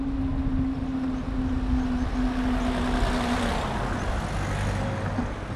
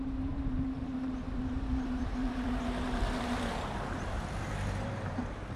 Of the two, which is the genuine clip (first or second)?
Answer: first